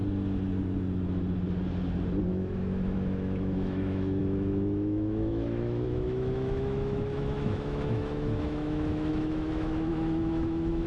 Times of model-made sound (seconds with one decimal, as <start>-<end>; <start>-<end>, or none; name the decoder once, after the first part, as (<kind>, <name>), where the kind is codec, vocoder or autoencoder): 2.3-10.9 (autoencoder, DAC-VAE)